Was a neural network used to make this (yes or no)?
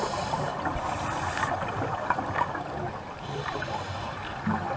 no